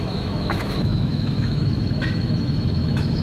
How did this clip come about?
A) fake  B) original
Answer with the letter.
A